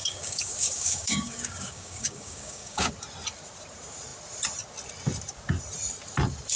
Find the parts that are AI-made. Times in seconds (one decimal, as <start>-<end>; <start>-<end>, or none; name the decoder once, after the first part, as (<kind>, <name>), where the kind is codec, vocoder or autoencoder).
0.0-2.9 (codec, DAC)